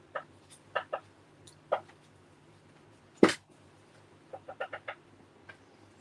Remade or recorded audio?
remade